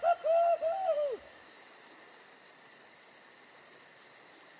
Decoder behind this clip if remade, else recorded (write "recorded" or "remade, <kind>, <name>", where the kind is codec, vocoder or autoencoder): recorded